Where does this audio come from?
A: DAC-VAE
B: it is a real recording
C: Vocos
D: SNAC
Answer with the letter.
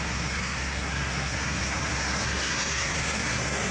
D